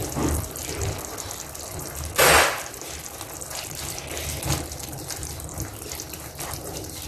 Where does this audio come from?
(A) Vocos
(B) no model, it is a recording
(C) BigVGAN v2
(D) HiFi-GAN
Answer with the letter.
B